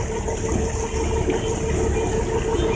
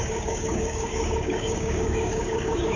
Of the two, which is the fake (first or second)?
second